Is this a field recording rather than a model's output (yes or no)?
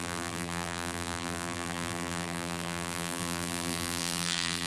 no